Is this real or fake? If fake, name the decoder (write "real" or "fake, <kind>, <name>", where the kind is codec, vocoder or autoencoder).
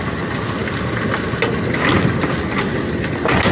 real